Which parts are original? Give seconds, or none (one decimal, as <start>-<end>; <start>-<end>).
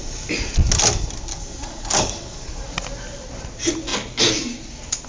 0.0-1.3; 2.7-5.1